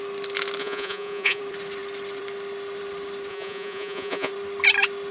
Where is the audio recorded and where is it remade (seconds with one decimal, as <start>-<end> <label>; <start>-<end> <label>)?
0.0-0.6 recorded; 0.6-1.4 remade; 1.4-3.3 recorded; 3.3-4.3 remade; 4.3-5.1 recorded